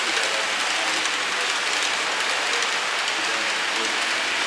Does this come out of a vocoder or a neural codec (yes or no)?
no